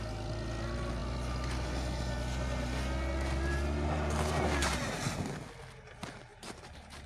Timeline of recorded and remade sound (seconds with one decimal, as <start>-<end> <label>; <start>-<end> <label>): 0.0-6.3 recorded; 6.3-7.1 remade